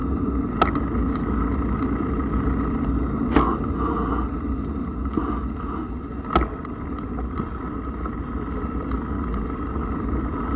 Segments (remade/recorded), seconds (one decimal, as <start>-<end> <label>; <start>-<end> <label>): 0.0-10.6 recorded